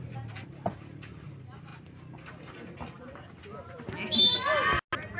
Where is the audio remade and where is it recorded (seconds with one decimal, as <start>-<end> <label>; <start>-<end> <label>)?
0.0-5.2 recorded